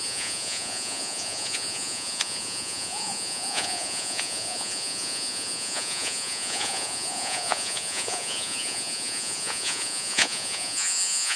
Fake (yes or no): yes